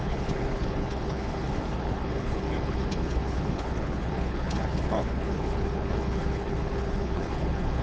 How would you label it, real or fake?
fake